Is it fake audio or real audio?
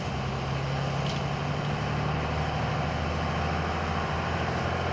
real